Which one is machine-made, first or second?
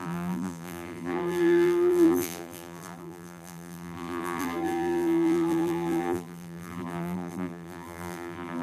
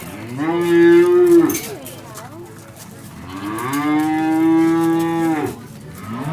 first